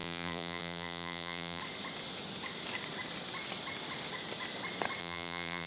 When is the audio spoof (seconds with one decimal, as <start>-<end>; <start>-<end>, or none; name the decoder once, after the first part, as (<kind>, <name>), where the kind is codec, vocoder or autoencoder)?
0.0-1.6 (vocoder, BigVGAN v2); 5.0-5.7